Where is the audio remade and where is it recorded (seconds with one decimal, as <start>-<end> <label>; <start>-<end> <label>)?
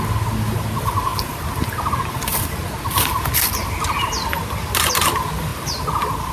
0.0-6.3 recorded